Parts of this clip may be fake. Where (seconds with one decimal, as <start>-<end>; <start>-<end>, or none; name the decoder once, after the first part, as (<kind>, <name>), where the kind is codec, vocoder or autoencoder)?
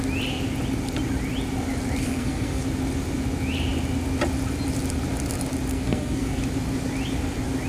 2.0-2.6 (codec, SNAC); 5.7-6.4